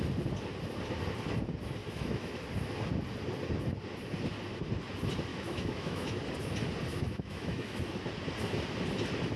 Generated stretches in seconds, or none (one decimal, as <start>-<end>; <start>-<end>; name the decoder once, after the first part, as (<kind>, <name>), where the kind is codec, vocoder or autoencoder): 1.8-2.4 (autoencoder, DAC-VAE); 5.3-6.2; 6.9-7.8